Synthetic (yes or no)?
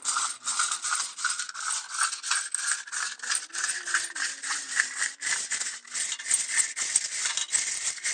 no